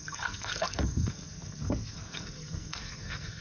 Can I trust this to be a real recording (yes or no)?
no